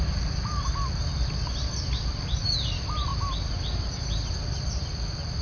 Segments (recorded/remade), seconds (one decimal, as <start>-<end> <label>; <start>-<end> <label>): 0.0-5.4 recorded